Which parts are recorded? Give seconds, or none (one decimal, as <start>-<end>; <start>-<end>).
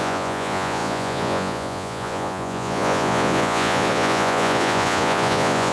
none